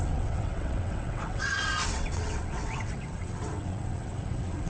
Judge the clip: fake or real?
fake